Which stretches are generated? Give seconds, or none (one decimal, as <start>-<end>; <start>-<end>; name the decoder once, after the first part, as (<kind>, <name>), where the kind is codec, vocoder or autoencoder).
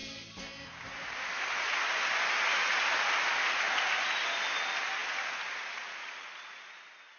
none